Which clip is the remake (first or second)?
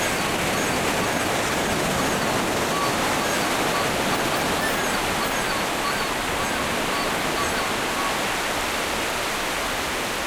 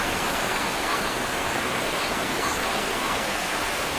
second